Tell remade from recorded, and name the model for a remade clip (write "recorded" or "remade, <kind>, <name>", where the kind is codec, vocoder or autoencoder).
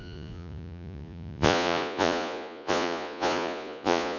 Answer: remade, vocoder, Vocos